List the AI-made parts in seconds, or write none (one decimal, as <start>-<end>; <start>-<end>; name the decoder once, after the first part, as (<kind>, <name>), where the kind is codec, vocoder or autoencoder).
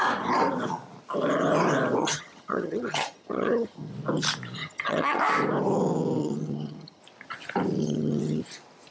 2.0-3.9 (vocoder, HiFi-GAN); 4.6-5.2; 6.2-7.0; 7.8-8.4